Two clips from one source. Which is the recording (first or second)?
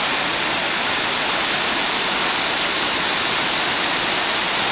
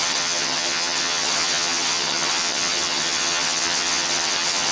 first